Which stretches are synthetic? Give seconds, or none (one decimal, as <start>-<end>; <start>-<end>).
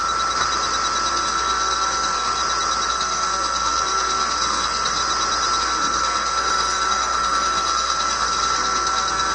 1.1-2.4; 2.9-5.0; 5.6-9.3